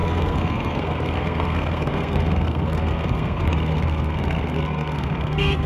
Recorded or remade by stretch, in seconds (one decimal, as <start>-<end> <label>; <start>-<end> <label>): 0.0-5.7 remade